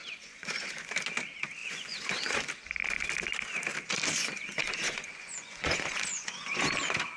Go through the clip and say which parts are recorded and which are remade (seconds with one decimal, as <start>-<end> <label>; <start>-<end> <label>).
0.0-0.9 remade; 0.9-1.6 recorded; 1.6-2.5 remade; 2.5-4.2 recorded; 4.2-6.7 remade; 6.7-7.2 recorded